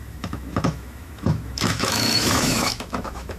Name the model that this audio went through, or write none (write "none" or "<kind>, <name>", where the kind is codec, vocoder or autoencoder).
autoencoder, DAC-VAE